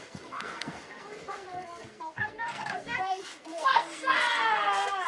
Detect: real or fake fake